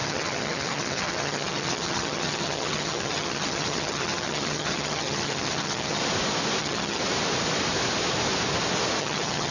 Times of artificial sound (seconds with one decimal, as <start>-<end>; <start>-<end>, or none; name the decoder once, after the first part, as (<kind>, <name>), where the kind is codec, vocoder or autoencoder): 0.0-6.0 (vocoder, HiFi-GAN); 6.6-7.0; 9.0-9.5